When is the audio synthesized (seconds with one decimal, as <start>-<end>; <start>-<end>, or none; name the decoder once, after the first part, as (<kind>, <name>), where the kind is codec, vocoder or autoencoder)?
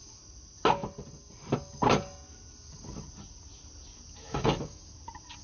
4.2-4.8 (autoencoder, DAC-VAE)